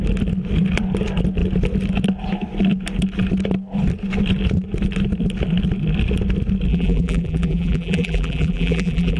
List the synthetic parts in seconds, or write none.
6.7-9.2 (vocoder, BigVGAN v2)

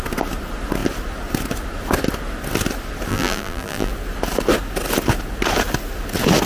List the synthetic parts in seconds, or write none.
3.1-3.9 (vocoder, BigVGAN v2)

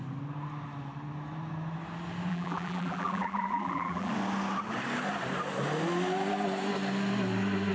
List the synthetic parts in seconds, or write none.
2.3-4.1 (vocoder, BigVGAN v2)

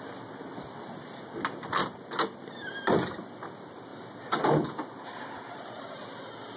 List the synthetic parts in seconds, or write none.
3.9-4.4 (vocoder, BigVGAN v2)

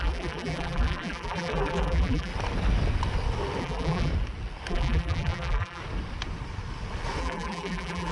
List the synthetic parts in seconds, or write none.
0.0-2.3 (vocoder, BigVGAN v2); 3.6-4.1; 4.7-5.8; 7.2-8.1

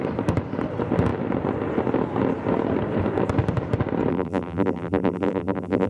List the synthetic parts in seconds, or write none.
4.1-5.9 (vocoder, BigVGAN v2)

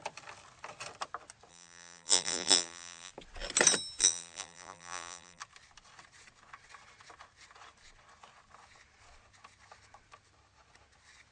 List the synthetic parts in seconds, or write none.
1.5-3.1 (vocoder, BigVGAN v2); 4.0-5.4